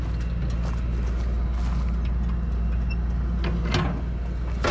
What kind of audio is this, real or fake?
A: real